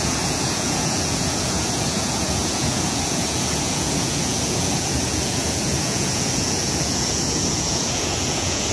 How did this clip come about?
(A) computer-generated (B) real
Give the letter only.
A